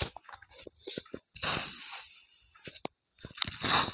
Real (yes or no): yes